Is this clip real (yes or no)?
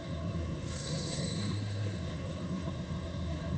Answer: no